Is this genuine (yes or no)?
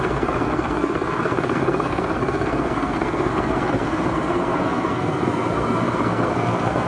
no